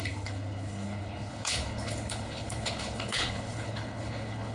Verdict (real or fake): fake